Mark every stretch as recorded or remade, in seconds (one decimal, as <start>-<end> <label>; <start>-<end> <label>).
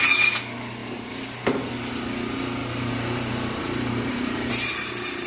0.0-0.8 recorded; 0.8-1.6 remade; 1.6-2.6 recorded; 2.6-4.5 remade; 4.5-5.3 recorded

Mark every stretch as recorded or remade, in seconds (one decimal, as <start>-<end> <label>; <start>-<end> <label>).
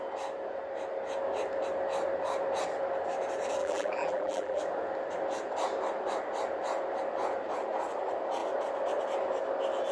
0.0-3.6 recorded; 3.6-4.6 remade; 4.6-9.9 recorded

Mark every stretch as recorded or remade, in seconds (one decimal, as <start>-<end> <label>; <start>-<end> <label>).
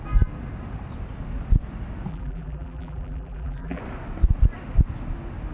0.0-2.1 recorded; 2.1-3.8 remade; 3.8-5.5 recorded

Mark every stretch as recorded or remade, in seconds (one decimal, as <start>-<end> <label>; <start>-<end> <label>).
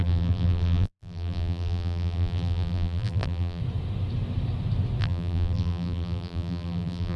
0.0-3.6 remade; 3.6-5.0 recorded; 5.0-7.2 remade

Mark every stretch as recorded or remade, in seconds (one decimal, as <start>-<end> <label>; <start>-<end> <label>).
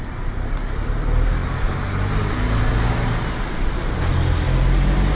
0.0-5.1 recorded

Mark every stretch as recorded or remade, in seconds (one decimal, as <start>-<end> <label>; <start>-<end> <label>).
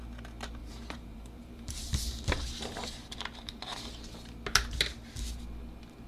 0.0-0.6 recorded; 0.6-3.6 remade; 3.6-6.1 recorded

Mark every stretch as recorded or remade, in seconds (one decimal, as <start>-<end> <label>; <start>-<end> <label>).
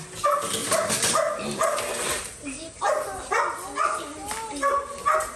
0.0-0.6 recorded; 0.6-3.4 remade; 3.4-5.4 recorded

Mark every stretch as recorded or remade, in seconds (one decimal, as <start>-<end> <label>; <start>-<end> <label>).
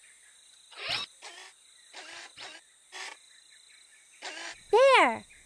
0.0-1.3 recorded; 1.3-4.6 remade; 4.6-5.5 recorded